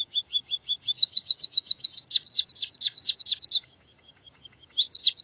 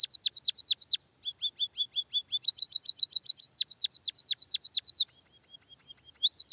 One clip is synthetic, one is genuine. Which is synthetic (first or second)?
first